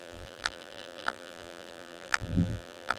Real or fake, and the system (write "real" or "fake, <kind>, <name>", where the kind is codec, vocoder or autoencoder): fake, vocoder, BigVGAN v2